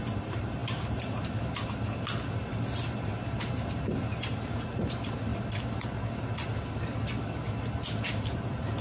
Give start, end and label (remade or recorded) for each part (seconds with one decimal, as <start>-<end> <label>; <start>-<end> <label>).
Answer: 0.0-5.3 remade; 5.3-7.9 recorded; 7.9-8.8 remade